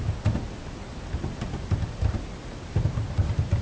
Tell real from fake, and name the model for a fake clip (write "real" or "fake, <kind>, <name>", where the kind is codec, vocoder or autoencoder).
real